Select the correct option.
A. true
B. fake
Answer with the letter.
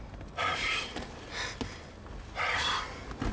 A